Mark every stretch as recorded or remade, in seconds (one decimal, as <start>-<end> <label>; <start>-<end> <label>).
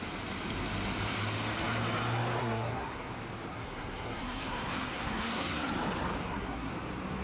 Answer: 0.0-2.4 recorded; 2.4-3.1 remade; 3.1-3.5 recorded; 3.5-5.7 remade; 5.7-6.2 recorded; 6.2-6.7 remade; 6.7-7.2 recorded